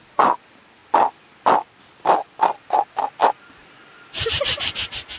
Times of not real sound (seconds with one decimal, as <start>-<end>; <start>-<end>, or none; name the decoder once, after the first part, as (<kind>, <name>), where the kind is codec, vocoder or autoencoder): none